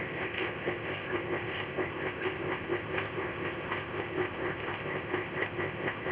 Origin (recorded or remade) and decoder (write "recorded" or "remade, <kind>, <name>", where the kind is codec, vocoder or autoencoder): remade, codec, ZipCodec